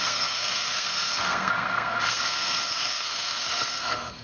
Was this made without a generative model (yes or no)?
no